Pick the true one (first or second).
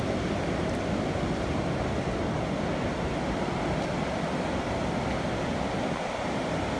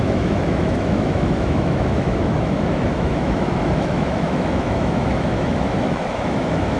first